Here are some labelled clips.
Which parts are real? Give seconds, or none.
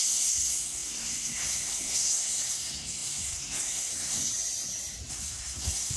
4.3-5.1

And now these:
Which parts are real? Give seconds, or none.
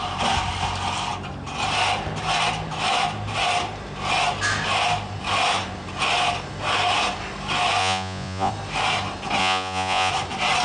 0.0-7.8; 8.5-9.4; 10.1-10.6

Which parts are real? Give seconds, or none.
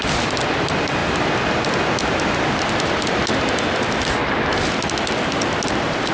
0.0-6.1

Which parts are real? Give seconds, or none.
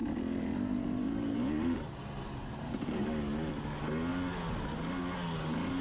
3.5-5.8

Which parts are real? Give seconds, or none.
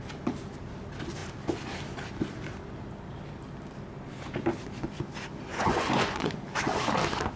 0.0-5.5; 6.3-7.4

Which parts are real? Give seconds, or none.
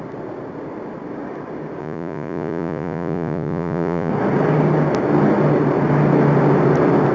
0.0-1.8; 4.1-7.1